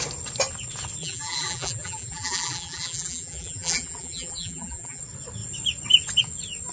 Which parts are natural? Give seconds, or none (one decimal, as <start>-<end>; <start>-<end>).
0.0-1.0; 5.0-6.7